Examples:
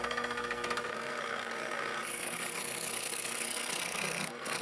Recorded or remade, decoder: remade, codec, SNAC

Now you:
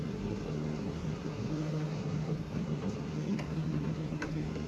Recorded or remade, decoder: remade, codec, SNAC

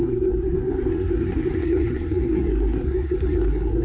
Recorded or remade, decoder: remade, codec, SNAC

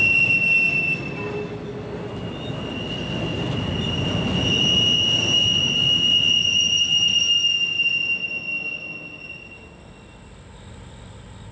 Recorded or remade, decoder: recorded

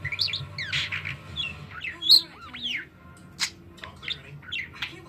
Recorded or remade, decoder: recorded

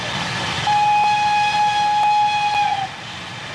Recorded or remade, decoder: recorded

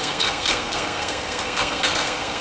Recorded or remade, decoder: remade, codec, SNAC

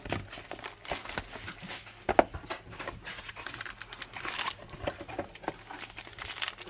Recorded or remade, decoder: recorded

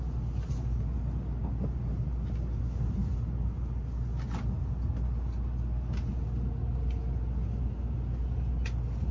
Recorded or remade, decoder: recorded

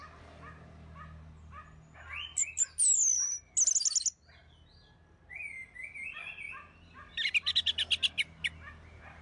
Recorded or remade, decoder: recorded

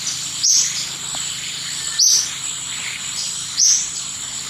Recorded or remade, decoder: recorded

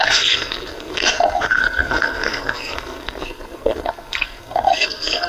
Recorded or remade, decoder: remade, codec, SNAC